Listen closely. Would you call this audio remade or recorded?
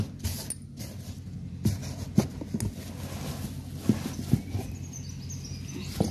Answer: recorded